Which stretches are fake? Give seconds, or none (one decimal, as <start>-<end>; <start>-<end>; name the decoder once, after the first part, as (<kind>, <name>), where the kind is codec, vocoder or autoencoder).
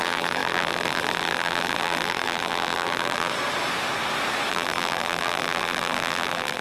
0.0-3.3 (vocoder, BigVGAN v2); 4.5-6.6